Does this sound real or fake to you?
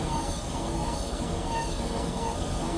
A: fake